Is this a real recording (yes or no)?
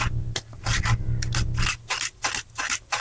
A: yes